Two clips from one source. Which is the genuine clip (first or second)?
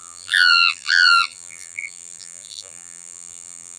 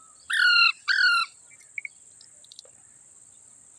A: second